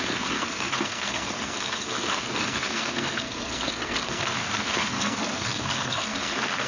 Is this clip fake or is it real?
fake